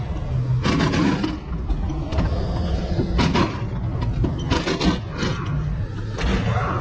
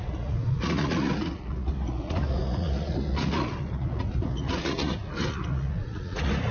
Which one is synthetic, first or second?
second